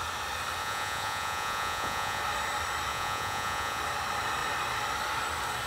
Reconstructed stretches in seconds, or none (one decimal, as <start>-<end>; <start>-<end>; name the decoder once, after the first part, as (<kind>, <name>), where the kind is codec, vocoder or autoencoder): 0.6-2.2 (vocoder, Vocos); 2.9-3.8